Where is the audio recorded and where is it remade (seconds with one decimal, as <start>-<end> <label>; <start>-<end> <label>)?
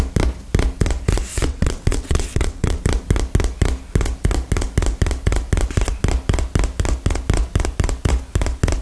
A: 0.0-1.3 recorded; 1.3-2.8 remade; 2.8-8.8 recorded